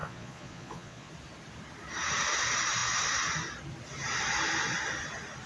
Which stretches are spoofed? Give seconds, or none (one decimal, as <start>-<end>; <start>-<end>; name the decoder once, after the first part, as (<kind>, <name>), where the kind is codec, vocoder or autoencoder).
0.0-1.1 (vocoder, Vocos)